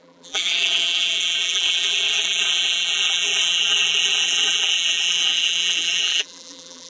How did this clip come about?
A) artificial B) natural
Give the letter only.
A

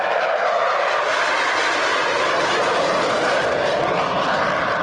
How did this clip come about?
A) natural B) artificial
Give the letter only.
B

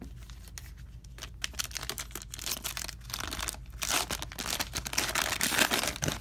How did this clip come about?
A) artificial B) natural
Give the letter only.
B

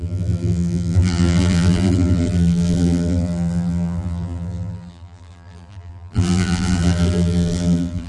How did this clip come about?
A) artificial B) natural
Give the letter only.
A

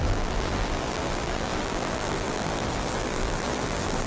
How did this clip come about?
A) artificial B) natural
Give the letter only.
A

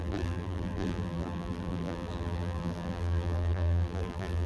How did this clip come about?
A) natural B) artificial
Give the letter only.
B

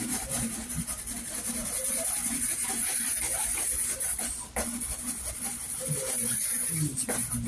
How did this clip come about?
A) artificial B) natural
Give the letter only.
A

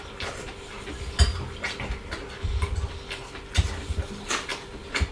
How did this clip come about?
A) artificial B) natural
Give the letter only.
B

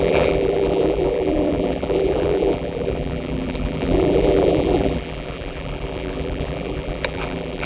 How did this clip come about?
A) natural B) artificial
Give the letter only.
B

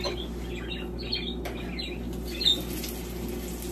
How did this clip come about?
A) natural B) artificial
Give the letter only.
A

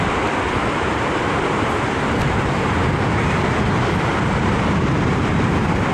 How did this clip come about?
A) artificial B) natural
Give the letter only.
A